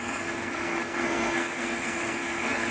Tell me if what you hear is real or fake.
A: fake